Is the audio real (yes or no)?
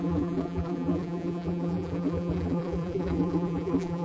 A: no